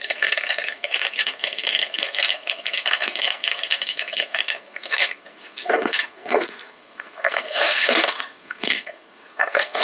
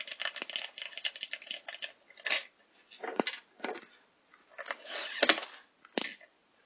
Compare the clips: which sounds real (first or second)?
second